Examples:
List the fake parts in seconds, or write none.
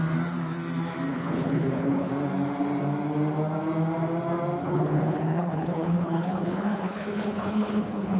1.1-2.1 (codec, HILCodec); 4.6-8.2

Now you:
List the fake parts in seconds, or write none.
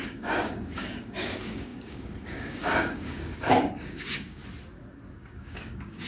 0.0-4.4 (codec, DAC); 5.1-6.1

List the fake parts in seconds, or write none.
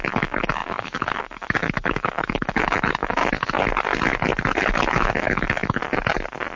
0.0-3.2 (autoencoder, DAC-VAE); 4.7-5.8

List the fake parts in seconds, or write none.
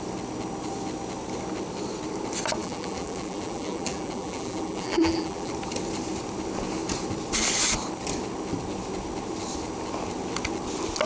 2.6-5.5 (vocoder, BigVGAN v2)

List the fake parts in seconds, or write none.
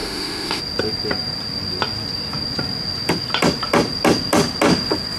0.0-0.6 (autoencoder, DAC-VAE)